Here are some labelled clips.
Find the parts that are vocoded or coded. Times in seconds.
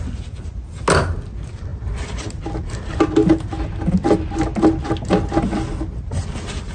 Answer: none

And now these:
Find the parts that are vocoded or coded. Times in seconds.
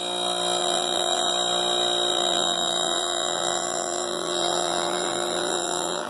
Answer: 0.6-1.3; 2.1-6.1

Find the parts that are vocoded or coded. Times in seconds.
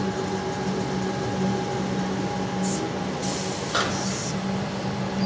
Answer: none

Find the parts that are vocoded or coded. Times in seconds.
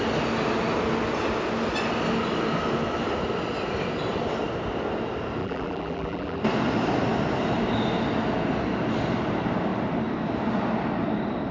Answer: 5.4-6.4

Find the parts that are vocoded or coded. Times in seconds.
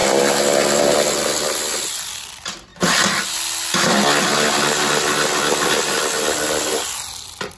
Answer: none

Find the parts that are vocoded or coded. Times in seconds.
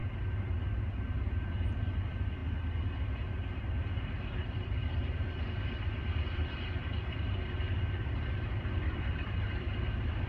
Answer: 0.0-2.4; 4.3-10.3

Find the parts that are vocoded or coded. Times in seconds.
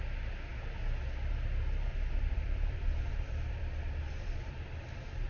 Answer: 1.9-4.5